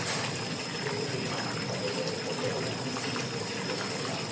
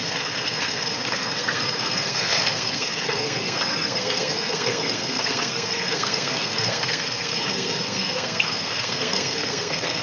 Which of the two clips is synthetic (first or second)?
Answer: second